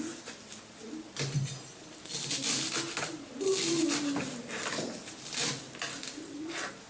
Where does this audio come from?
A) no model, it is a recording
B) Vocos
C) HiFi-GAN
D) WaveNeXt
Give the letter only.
A